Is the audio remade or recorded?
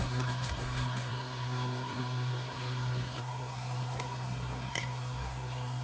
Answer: remade